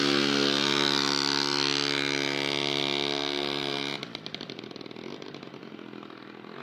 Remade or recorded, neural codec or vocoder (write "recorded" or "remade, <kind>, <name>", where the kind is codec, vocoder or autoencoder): recorded